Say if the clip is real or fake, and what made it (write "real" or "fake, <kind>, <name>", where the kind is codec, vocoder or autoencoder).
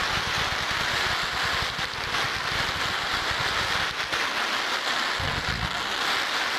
real